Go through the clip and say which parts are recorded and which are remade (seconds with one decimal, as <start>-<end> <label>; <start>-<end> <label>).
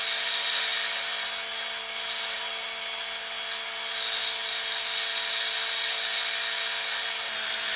0.0-7.8 recorded